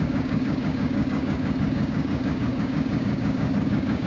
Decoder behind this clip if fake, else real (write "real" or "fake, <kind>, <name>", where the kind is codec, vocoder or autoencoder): fake, codec, DAC